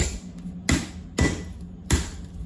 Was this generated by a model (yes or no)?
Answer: no